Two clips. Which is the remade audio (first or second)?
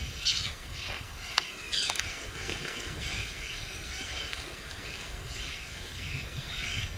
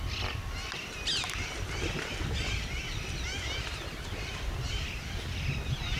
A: first